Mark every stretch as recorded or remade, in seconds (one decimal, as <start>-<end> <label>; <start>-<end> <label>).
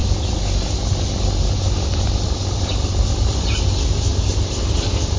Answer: 0.0-5.2 recorded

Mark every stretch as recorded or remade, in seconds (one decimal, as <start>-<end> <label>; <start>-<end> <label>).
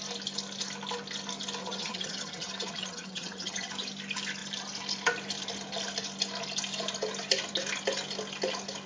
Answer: 0.0-1.6 recorded; 1.6-3.7 remade; 3.7-8.9 recorded